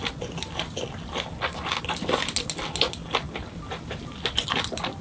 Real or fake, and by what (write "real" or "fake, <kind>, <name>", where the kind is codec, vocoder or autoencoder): real